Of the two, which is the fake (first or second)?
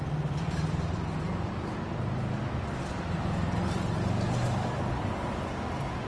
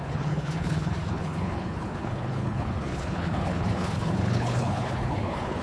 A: second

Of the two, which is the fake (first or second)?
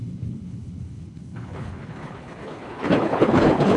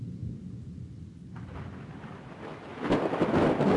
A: first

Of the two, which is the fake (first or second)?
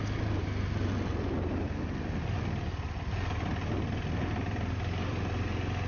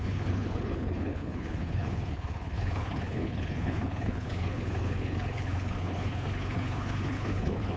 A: second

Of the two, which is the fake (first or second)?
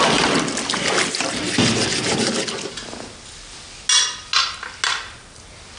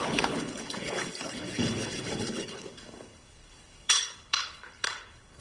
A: second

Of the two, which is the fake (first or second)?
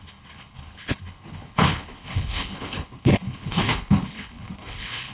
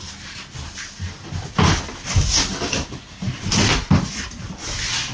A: first